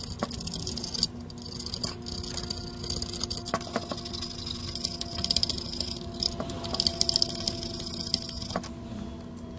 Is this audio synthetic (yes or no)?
no